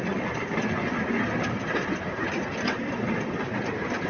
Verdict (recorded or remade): recorded